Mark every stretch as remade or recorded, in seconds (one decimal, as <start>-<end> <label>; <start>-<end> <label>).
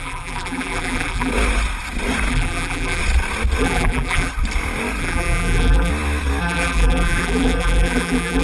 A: 0.0-1.3 remade; 1.3-2.3 recorded; 2.3-3.0 remade; 3.0-3.6 recorded; 3.6-4.3 remade; 4.3-5.0 recorded; 5.0-5.9 remade; 5.9-6.4 recorded; 6.4-8.4 remade